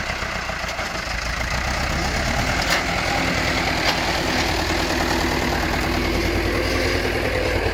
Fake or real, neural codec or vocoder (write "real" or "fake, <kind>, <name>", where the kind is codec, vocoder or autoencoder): real